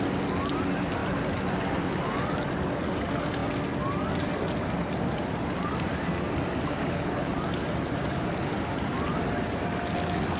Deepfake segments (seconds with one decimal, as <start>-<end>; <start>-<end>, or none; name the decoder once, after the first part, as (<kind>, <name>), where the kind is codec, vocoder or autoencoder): 6.8-7.3 (codec, HILCodec)